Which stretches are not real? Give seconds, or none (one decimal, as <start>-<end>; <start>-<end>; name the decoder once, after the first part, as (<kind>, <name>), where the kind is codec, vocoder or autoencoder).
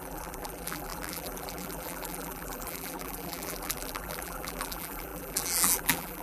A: 0.0-6.2 (vocoder, BigVGAN v2)